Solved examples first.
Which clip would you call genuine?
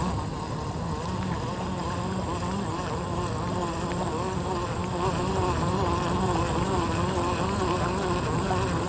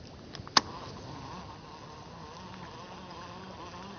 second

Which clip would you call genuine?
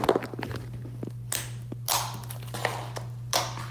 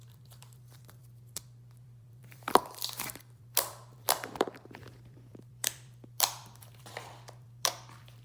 first